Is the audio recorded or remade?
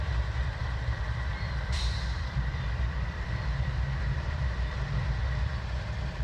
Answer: remade